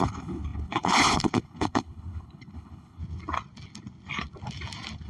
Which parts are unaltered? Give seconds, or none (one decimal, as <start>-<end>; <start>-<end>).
3.0-5.1